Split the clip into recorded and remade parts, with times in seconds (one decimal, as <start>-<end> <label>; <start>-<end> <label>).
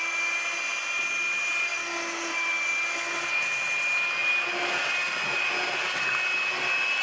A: 0.0-7.0 recorded